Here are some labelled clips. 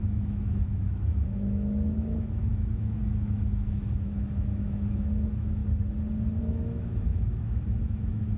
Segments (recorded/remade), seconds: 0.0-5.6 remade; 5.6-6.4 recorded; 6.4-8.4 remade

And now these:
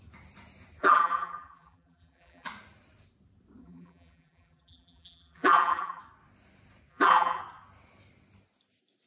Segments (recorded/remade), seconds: 0.0-0.8 recorded; 0.8-2.5 remade; 2.5-3.6 recorded; 3.6-6.0 remade; 6.0-6.9 recorded; 6.9-7.4 remade; 7.4-9.1 recorded

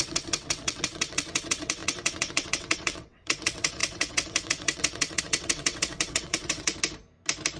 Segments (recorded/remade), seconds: 0.0-6.7 remade; 6.7-7.6 recorded

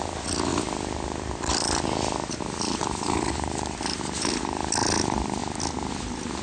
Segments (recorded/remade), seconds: 0.0-0.5 recorded; 0.5-4.3 remade; 4.3-6.4 recorded

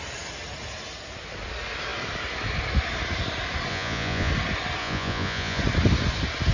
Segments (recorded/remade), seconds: 0.0-3.7 recorded; 3.7-4.3 remade; 4.3-4.8 recorded; 4.8-5.6 remade; 5.6-6.5 recorded

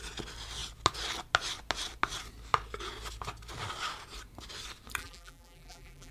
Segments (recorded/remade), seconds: 0.0-5.0 recorded; 5.0-6.1 remade